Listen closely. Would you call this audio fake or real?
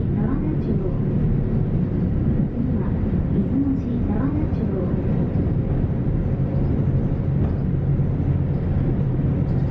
real